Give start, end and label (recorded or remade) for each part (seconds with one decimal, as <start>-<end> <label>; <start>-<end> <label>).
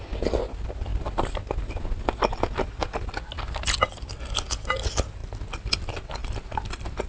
0.0-7.1 recorded